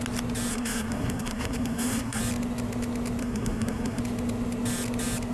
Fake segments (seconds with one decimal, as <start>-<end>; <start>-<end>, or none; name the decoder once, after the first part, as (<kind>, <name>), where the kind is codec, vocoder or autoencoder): 0.5-2.2 (codec, SNAC); 3.2-4.0